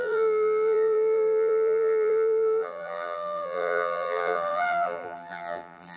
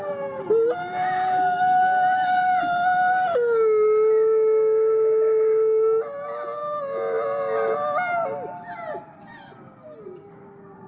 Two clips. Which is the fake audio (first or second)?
first